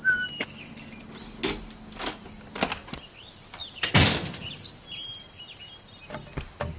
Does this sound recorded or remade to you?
recorded